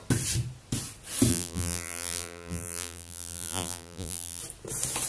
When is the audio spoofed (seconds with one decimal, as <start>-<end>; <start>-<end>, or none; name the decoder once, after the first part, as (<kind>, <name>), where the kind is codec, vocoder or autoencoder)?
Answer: 1.3-4.4 (vocoder, BigVGAN v2)